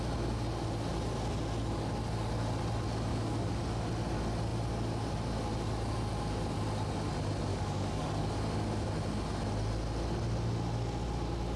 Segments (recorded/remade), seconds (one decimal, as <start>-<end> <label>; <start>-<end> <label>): 0.0-3.1 recorded; 3.1-3.6 remade; 3.6-7.5 recorded; 7.5-8.3 remade; 8.3-11.6 recorded